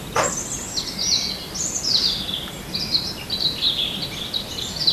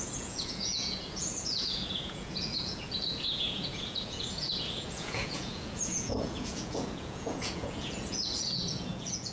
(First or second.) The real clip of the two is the first